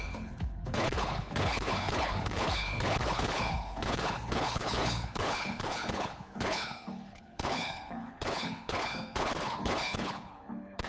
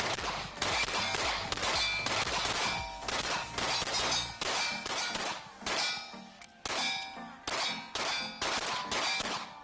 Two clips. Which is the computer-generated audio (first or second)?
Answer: first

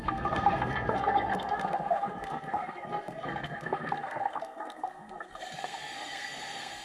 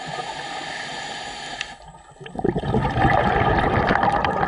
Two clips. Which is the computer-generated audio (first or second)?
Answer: first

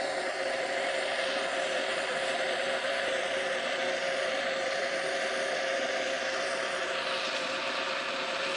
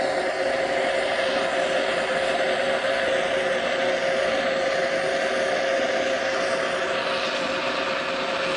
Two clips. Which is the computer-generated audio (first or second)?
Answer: first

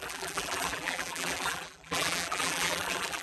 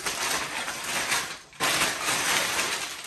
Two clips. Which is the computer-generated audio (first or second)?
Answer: first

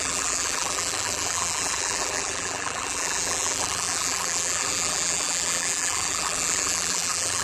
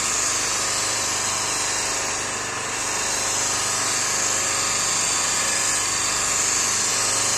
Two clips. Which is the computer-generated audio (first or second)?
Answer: first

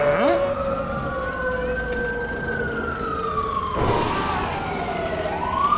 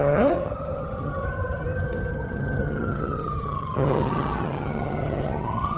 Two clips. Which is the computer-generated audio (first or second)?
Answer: second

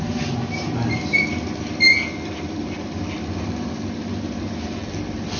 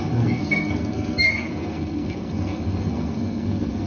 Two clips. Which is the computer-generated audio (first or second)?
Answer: second